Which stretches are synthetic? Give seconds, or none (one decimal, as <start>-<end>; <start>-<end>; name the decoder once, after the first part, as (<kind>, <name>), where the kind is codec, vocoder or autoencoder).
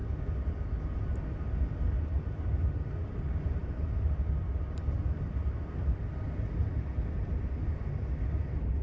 3.6-4.6 (vocoder, BigVGAN v2)